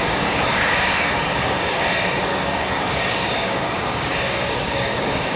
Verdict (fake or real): fake